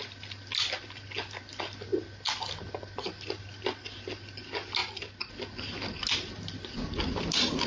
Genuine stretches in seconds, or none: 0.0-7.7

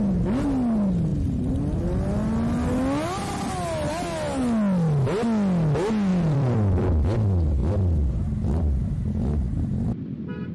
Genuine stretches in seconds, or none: 0.0-1.1; 1.8-6.1; 6.9-10.5